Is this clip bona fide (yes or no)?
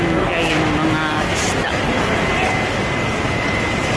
yes